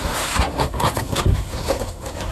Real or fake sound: fake